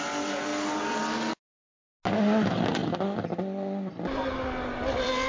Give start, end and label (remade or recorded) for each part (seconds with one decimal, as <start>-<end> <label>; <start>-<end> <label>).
0.0-5.3 recorded